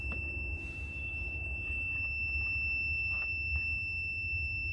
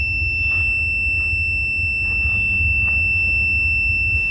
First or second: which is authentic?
second